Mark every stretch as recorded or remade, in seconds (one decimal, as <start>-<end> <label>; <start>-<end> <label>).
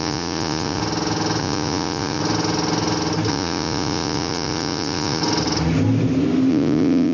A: 0.0-0.8 remade; 0.8-1.4 recorded; 1.4-2.2 remade; 2.2-3.3 recorded; 3.3-5.2 remade; 5.2-6.5 recorded; 6.5-7.1 remade